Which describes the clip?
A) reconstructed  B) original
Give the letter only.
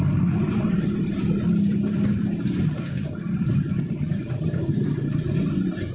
A